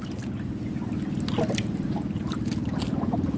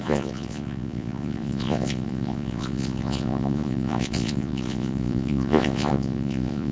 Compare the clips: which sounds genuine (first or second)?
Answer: first